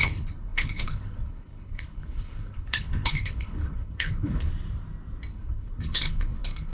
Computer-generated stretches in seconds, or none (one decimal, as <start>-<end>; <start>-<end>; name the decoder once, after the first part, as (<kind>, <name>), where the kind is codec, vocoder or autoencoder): 0.0-4.5 (codec, HILCodec); 5.3-6.7